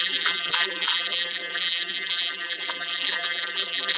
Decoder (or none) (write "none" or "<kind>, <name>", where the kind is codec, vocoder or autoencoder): vocoder, BigVGAN v2